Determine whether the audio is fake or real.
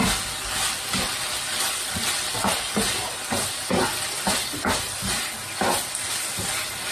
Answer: fake